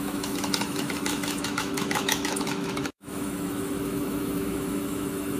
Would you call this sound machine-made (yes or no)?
yes